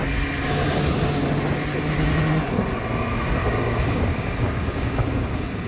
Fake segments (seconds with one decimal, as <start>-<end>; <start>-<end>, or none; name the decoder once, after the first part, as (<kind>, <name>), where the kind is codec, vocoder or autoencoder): 3.4-5.3 (codec, DAC)